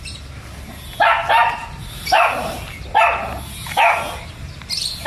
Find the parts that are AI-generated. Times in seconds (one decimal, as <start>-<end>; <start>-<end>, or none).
none